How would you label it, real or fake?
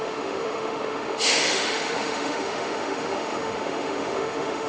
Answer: fake